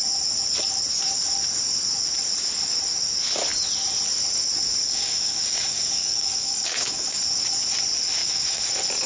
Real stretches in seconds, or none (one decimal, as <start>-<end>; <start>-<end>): 0.0-4.8; 7.2-8.2; 8.7-9.1